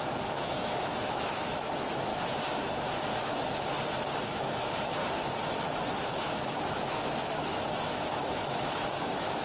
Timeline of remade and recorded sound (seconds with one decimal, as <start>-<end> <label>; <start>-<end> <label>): 0.0-2.1 remade; 2.1-4.2 recorded; 4.2-5.0 remade; 5.0-6.2 recorded; 6.2-9.4 remade